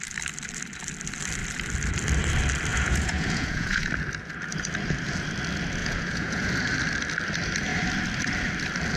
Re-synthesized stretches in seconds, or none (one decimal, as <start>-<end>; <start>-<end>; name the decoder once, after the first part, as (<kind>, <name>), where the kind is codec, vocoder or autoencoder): 2.7-3.9 (vocoder, Vocos); 5.8-6.5